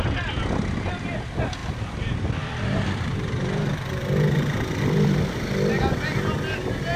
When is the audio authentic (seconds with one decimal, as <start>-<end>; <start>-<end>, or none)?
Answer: 0.0-1.6; 5.8-7.0